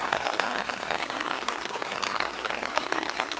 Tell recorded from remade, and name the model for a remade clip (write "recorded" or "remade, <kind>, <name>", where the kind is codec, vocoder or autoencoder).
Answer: remade, codec, SNAC